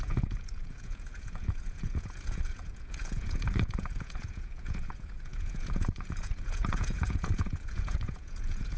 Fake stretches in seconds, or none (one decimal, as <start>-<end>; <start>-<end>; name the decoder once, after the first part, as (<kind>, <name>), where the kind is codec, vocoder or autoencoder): 0.0-8.8 (vocoder, Vocos)